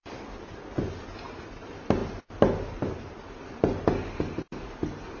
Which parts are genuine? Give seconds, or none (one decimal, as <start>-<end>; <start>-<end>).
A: 0.0-5.2